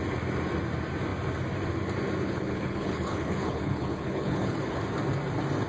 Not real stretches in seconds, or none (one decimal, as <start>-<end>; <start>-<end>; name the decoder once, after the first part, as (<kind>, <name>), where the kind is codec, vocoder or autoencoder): 2.2-4.8 (codec, HILCodec)